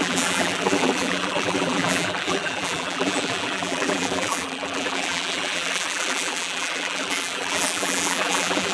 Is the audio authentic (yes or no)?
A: no